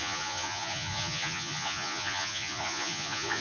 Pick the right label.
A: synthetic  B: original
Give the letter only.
A